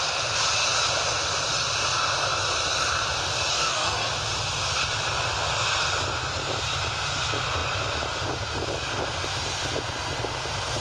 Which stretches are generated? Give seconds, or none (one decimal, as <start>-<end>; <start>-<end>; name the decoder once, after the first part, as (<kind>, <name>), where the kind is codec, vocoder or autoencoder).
3.5-4.1 (codec, DAC)

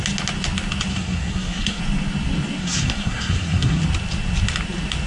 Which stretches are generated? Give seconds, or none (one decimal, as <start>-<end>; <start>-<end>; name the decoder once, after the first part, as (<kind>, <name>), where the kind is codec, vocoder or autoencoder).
0.9-1.8 (codec, SNAC); 2.6-3.8

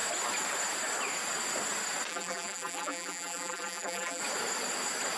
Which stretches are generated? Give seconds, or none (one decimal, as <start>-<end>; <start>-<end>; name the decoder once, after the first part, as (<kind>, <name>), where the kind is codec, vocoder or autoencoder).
2.1-4.2 (vocoder, BigVGAN v2)

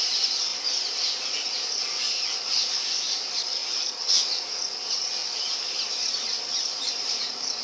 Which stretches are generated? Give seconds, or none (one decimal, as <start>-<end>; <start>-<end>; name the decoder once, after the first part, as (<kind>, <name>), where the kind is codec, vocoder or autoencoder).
0.0-0.5 (vocoder, BigVGAN v2); 1.3-7.6

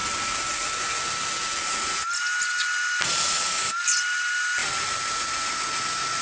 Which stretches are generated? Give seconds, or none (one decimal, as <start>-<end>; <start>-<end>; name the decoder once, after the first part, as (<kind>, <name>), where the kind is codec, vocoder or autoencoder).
none

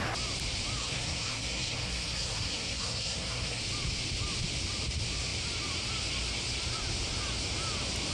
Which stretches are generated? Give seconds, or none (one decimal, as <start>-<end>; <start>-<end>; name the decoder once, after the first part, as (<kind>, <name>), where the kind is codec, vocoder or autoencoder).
0.8-3.6 (codec, SNAC)